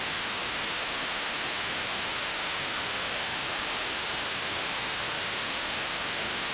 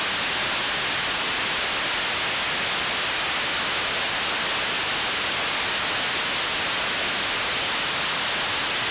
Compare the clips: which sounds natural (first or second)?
second